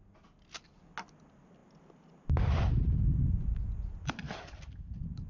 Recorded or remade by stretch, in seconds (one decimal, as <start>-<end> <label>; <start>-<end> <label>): 0.0-5.3 recorded